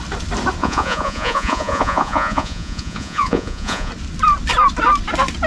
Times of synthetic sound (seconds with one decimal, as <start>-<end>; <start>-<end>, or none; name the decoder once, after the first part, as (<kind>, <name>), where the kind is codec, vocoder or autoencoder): 0.6-3.9 (vocoder, Vocos)